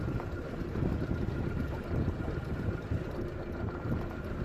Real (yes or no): no